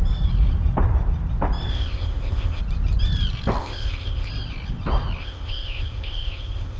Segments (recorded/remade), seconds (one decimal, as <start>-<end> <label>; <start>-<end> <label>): 0.0-1.7 recorded; 1.7-2.6 remade; 2.6-3.6 recorded; 3.6-4.3 remade; 4.3-5.2 recorded; 5.2-6.8 remade